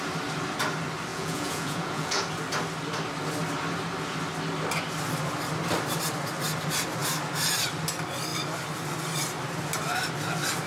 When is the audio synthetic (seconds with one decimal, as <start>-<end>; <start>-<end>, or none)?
1.1-2.2